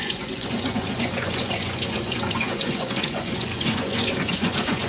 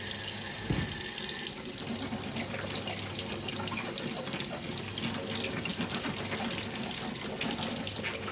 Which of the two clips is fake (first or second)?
first